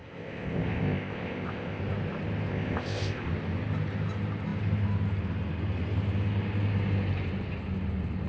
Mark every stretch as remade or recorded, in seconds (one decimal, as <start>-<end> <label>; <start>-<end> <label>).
0.0-1.8 remade; 1.8-2.5 recorded; 2.5-3.3 remade; 3.3-8.3 recorded